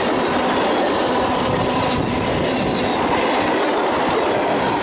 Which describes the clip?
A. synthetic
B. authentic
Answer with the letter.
B